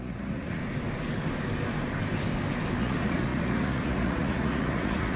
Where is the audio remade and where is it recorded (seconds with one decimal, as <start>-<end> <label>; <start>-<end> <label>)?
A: 0.0-0.6 remade; 0.6-2.8 recorded; 2.8-5.2 remade